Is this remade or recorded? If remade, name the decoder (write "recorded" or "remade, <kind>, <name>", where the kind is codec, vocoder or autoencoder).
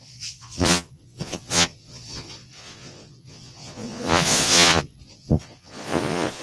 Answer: remade, vocoder, Vocos